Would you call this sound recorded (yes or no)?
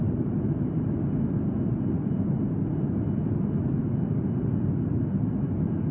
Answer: yes